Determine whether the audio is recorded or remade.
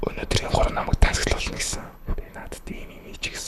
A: remade